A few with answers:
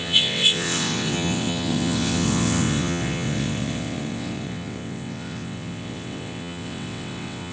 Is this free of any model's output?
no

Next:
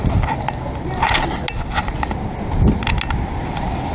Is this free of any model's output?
yes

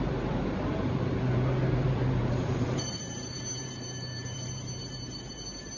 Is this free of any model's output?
no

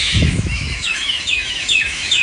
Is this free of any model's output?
no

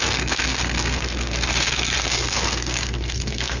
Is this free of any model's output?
no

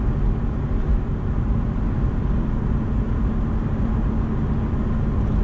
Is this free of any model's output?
yes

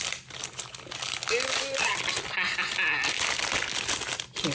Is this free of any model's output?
yes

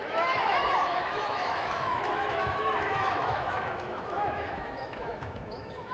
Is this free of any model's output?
no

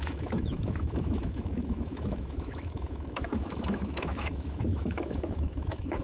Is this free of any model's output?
no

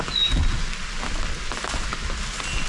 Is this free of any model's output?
yes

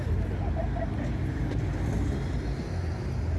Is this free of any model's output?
yes